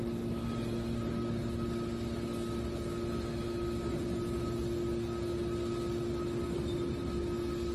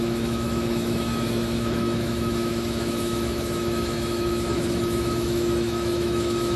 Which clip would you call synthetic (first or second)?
second